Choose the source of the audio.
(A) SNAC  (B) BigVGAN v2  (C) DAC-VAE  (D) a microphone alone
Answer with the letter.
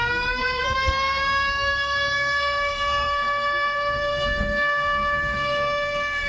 A